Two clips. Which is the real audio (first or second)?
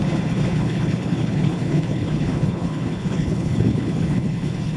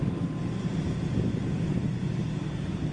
second